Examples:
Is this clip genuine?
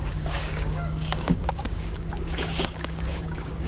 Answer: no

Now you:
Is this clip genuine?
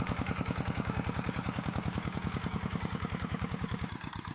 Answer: no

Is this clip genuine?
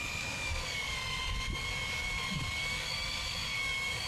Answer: no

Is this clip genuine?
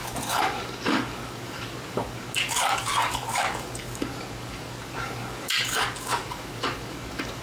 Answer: no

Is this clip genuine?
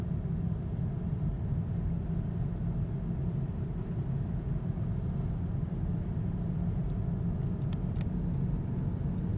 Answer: yes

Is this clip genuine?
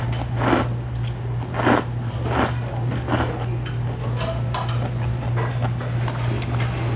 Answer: yes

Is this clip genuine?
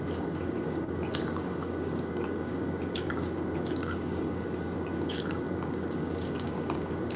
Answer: no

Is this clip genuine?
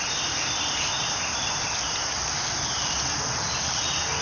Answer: yes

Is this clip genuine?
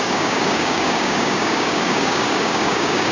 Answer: no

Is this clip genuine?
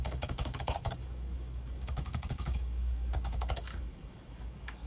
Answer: no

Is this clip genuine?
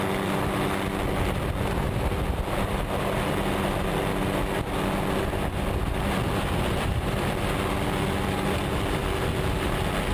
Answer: yes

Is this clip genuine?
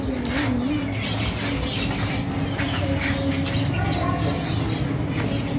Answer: yes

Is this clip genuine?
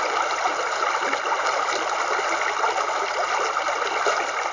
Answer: yes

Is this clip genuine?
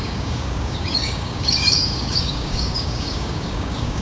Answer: no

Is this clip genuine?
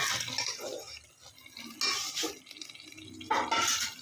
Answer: yes